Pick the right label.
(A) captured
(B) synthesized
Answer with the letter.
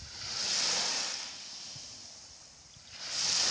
A